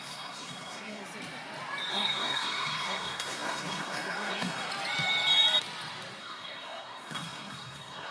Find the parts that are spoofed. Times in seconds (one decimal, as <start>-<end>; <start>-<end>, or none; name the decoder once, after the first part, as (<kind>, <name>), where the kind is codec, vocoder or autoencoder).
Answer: 0.0-1.0 (codec, SNAC); 1.9-4.7; 6.2-8.1